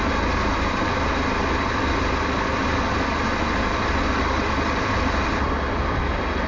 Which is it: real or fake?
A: real